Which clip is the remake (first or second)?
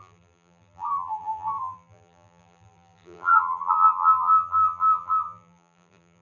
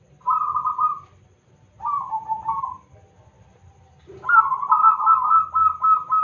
first